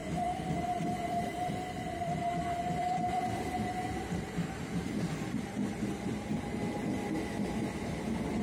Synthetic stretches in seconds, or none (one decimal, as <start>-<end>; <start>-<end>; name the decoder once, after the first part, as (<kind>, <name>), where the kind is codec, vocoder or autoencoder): 0.0-3.3 (vocoder, BigVGAN v2)